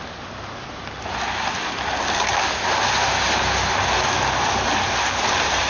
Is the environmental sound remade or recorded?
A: recorded